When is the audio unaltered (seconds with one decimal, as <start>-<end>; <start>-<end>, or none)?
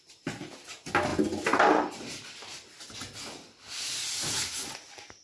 0.0-5.2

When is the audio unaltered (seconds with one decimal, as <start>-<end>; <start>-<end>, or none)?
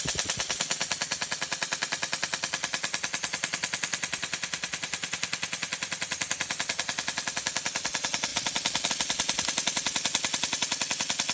0.0-11.3